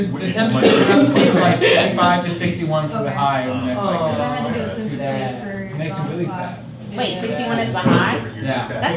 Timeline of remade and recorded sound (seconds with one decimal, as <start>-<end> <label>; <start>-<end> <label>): 0.0-9.0 recorded